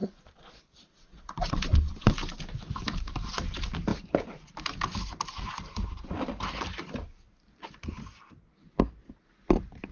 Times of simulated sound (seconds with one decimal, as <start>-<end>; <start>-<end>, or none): 0.0-2.1